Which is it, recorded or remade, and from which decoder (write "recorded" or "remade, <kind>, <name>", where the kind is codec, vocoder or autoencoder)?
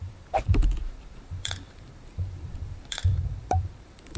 remade, vocoder, BigVGAN v2